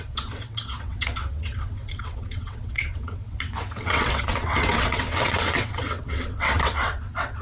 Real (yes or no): no